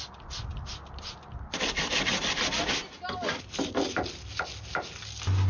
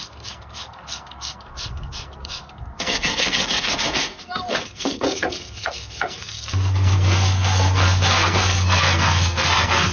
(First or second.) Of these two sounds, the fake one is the second